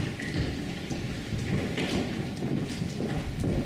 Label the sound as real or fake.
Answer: real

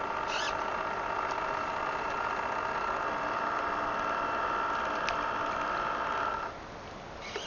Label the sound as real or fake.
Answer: real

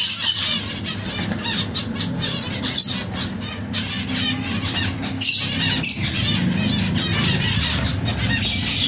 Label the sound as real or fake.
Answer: real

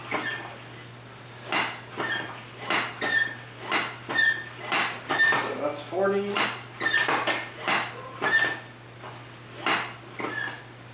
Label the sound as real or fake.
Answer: real